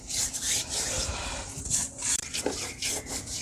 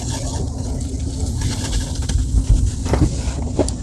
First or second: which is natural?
second